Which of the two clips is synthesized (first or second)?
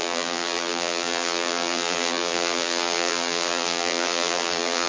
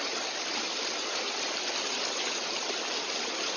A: first